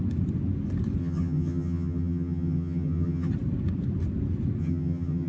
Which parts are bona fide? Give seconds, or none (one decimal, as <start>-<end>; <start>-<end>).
0.0-1.0; 3.3-4.6